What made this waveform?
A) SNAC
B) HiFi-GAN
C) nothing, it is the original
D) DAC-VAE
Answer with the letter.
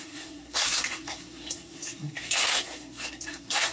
A